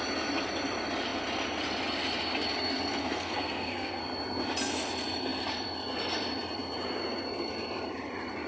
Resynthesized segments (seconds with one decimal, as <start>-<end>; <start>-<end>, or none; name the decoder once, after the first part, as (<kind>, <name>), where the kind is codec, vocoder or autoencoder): 3.0-4.0 (codec, SNAC)